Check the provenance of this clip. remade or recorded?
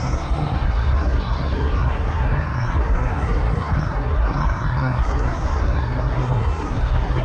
remade